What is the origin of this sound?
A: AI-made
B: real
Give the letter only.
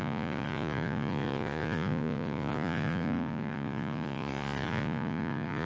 A